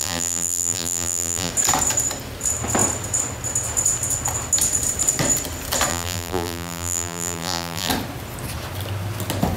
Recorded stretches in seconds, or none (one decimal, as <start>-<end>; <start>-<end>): 1.5-5.9; 7.9-9.6